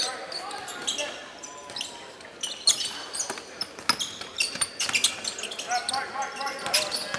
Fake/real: real